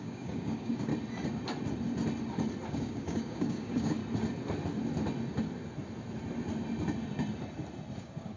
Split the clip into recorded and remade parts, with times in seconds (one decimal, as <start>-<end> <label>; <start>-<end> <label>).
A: 0.0-0.9 remade; 0.9-2.7 recorded; 2.7-4.0 remade; 4.0-8.0 recorded; 8.0-8.4 remade